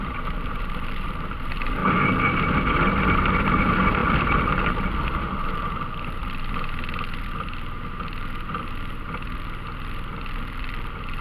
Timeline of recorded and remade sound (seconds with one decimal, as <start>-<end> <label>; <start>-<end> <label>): 0.0-11.2 remade